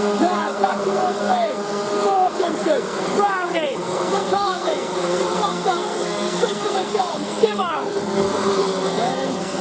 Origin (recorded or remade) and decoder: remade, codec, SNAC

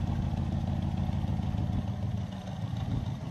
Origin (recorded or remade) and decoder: recorded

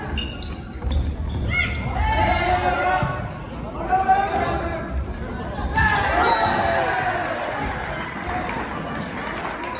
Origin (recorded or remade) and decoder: recorded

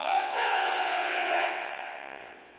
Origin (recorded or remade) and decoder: remade, vocoder, WaveNeXt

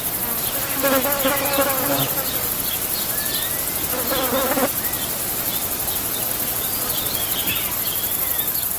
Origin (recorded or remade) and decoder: recorded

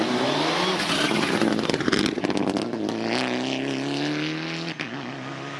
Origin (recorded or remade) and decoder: recorded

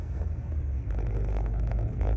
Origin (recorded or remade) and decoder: remade, codec, SNAC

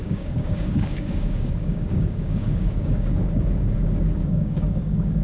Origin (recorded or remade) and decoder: remade, codec, DAC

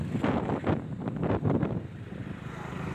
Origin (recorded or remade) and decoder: remade, vocoder, BigVGAN v2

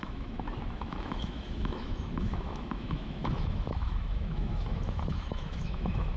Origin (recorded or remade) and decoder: remade, autoencoder, DAC-VAE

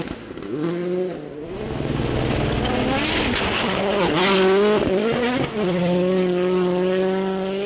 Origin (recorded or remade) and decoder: recorded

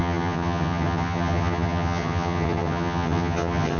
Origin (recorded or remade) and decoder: remade, vocoder, HiFi-GAN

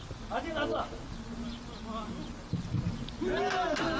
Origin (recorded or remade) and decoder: recorded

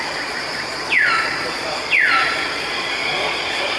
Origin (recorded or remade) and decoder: remade, vocoder, Vocos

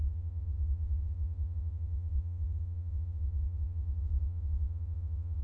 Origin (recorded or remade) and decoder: remade, vocoder, WaveNeXt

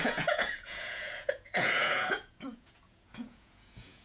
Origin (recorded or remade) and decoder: remade, vocoder, Vocos